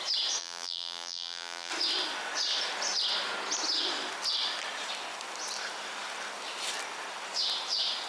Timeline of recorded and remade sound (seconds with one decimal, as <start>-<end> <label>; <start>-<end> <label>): 0.0-0.4 recorded; 0.4-1.7 remade; 1.7-8.1 recorded